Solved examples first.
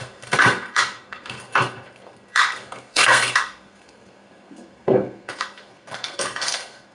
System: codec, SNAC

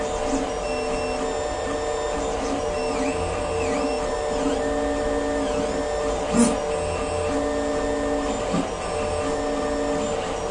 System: none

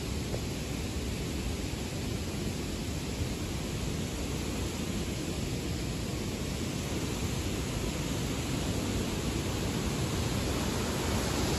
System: none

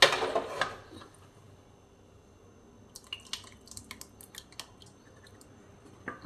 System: none